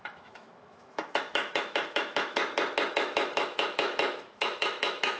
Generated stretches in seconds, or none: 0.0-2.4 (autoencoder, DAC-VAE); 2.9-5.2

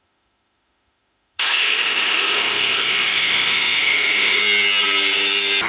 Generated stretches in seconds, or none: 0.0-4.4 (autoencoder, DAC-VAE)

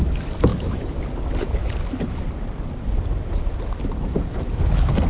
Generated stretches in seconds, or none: 0.5-1.0 (autoencoder, DAC-VAE)

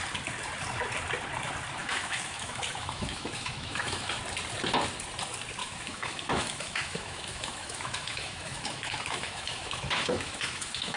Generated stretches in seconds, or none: 1.8-4.2 (autoencoder, DAC-VAE); 5.6-11.0

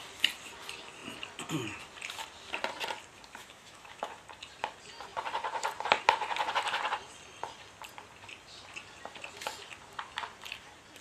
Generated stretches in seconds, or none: 3.4-4.1 (autoencoder, DAC-VAE)